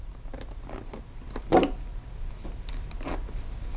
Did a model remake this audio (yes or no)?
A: no